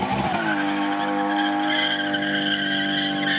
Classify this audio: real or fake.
real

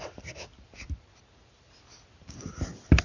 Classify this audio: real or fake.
real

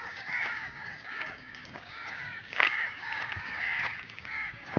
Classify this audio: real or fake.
fake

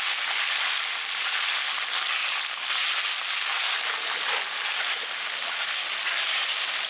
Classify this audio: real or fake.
real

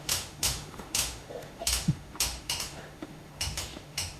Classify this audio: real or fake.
fake